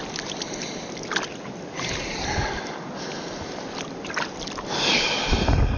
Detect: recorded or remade recorded